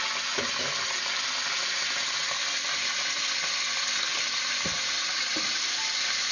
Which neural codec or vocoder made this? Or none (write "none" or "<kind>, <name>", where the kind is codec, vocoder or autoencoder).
none